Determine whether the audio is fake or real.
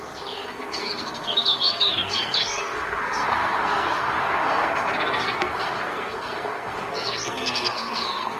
fake